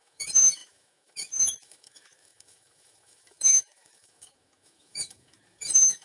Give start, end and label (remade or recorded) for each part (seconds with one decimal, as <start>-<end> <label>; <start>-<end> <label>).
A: 0.0-6.0 remade

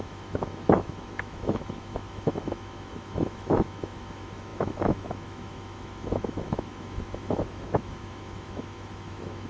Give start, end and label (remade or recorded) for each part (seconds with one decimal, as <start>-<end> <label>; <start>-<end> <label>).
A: 0.0-9.5 remade

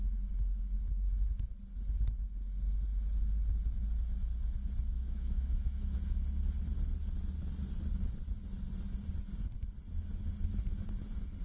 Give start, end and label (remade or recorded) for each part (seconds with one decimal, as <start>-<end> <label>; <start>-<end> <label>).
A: 0.0-4.9 recorded; 4.9-6.0 remade; 6.0-11.4 recorded

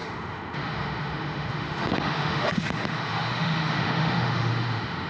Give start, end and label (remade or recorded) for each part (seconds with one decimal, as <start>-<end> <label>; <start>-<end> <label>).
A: 0.0-5.1 remade

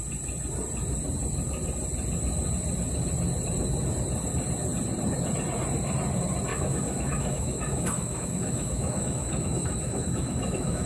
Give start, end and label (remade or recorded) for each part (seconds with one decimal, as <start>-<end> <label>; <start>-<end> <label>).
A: 0.0-6.5 recorded; 6.5-10.9 remade

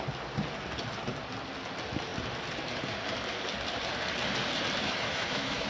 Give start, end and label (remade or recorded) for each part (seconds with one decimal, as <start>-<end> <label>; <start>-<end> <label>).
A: 0.0-4.8 recorded; 4.8-5.7 remade

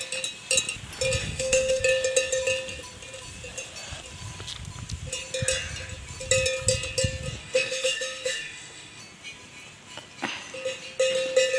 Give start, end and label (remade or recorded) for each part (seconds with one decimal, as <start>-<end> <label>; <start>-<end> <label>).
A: 0.0-1.2 recorded; 1.2-1.8 remade; 1.8-7.4 recorded; 7.4-9.0 remade; 9.0-11.6 recorded